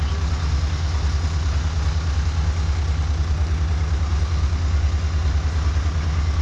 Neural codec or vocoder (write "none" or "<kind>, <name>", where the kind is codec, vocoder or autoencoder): none